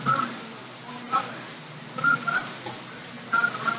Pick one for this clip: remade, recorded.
recorded